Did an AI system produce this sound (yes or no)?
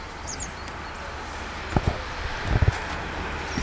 no